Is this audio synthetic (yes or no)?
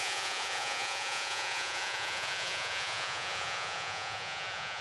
yes